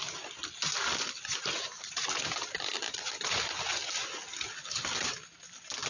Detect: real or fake real